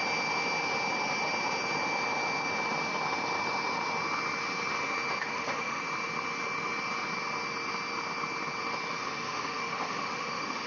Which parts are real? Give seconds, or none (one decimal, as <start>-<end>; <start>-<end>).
0.0-5.2; 5.8-9.0